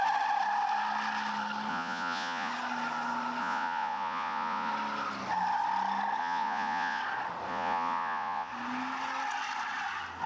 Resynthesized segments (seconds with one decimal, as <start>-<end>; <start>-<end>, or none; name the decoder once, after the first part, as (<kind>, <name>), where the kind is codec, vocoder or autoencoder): 1.7-2.5 (vocoder, Vocos); 3.4-4.7; 6.2-7.0; 7.5-8.5